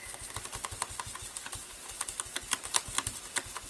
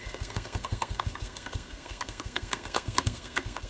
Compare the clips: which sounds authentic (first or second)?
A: first